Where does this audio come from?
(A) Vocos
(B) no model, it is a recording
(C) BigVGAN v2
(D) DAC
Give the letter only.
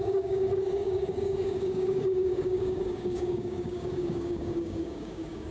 D